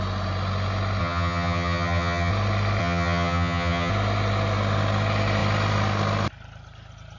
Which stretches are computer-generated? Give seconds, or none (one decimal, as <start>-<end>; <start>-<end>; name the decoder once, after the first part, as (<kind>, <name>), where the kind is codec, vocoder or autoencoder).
1.0-2.3 (vocoder, HiFi-GAN); 2.8-3.9